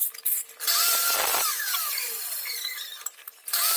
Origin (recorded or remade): remade